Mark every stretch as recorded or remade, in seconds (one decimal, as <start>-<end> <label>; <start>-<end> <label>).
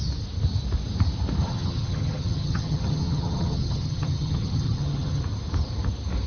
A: 0.0-1.4 recorded; 1.4-5.2 remade; 5.2-6.3 recorded